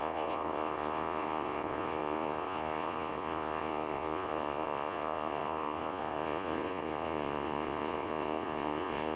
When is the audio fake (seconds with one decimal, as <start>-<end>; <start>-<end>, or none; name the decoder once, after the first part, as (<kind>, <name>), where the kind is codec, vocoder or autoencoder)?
0.0-9.2 (vocoder, Vocos)